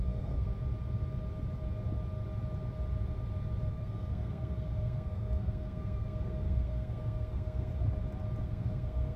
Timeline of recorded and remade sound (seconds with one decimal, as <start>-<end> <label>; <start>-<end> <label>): 0.0-0.5 remade; 0.5-3.7 recorded; 3.7-7.7 remade; 7.7-8.4 recorded; 8.4-9.2 remade

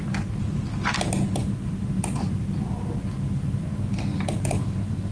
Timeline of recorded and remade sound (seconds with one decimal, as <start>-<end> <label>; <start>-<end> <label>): 0.0-5.1 recorded

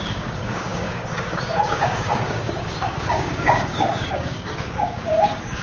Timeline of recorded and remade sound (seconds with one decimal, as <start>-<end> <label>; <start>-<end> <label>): 0.0-5.6 remade

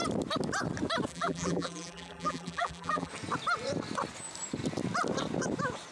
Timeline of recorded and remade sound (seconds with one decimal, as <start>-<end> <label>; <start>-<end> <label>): 0.0-1.1 recorded; 1.1-3.1 remade; 3.1-5.9 recorded

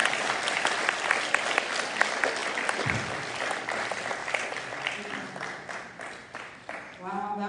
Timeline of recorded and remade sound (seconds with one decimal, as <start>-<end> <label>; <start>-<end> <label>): 0.0-4.2 remade; 4.2-5.7 recorded; 5.7-7.5 remade

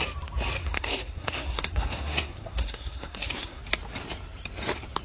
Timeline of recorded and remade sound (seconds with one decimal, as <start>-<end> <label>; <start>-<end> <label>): 0.0-0.6 recorded; 0.6-3.6 remade; 3.6-5.0 recorded